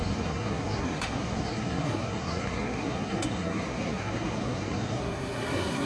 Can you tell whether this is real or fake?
fake